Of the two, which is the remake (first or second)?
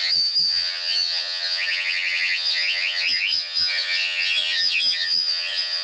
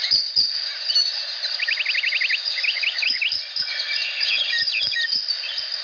first